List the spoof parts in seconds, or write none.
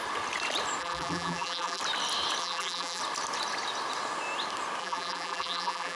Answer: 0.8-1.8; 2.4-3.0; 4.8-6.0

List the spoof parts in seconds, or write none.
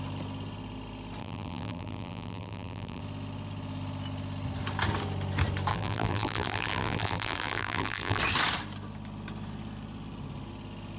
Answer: 1.2-3.0; 5.7-8.2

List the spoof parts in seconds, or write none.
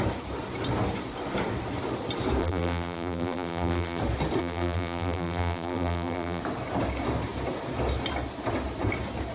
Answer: 2.4-4.0; 4.4-6.4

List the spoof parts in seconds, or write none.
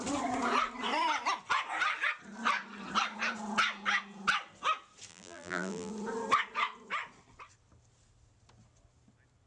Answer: 5.1-5.9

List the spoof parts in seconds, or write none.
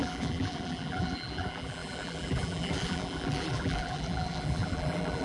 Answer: 0.0-5.2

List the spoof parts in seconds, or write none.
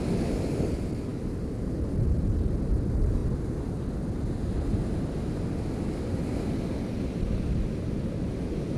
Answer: none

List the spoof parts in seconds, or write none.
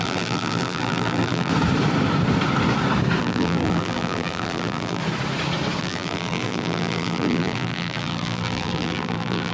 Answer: 0.0-1.5; 3.2-5.0; 5.8-9.5